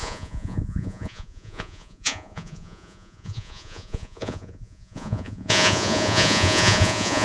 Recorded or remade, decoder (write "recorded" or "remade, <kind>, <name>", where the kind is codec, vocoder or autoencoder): remade, vocoder, Vocos